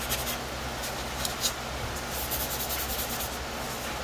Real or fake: real